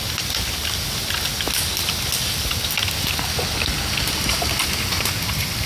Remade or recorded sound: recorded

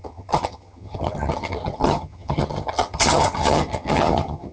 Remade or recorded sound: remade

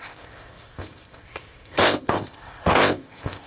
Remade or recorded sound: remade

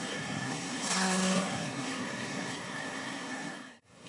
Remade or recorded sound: remade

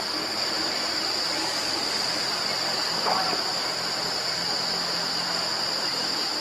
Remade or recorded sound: recorded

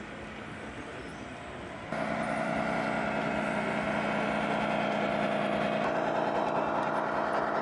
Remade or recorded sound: recorded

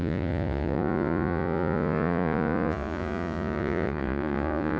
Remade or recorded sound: remade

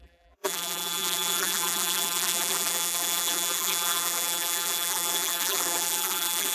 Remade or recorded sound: remade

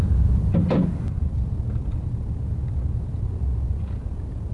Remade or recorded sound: recorded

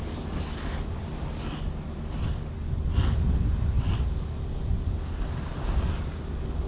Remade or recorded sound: recorded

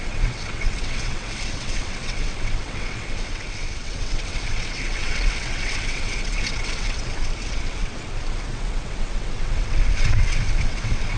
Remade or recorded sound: remade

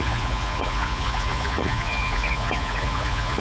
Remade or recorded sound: remade